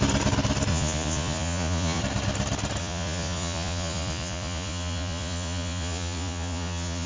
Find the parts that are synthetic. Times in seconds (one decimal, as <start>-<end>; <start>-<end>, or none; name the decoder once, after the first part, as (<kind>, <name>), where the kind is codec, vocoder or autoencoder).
0.7-2.0 (vocoder, Vocos); 2.8-7.1